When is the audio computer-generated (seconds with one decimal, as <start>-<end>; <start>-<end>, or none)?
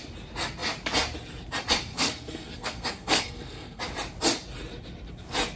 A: 1.9-3.8